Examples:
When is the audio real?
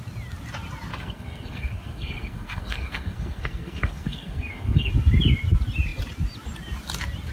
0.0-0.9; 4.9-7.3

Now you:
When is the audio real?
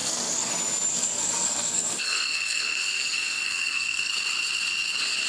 0.5-0.9; 4.1-5.3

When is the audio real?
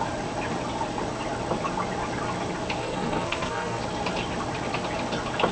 0.0-2.8; 3.8-5.5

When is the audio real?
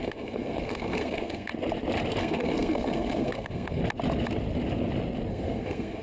1.5-2.2; 3.8-5.3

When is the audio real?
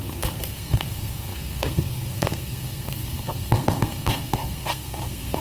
none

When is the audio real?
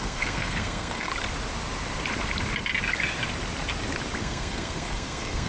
1.1-4.2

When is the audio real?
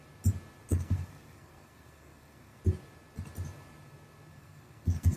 0.0-0.7; 2.6-4.3